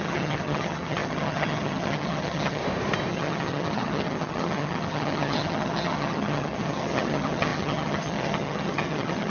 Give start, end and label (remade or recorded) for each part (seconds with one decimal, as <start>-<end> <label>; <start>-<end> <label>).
0.0-2.6 remade; 2.6-3.1 recorded; 3.1-9.3 remade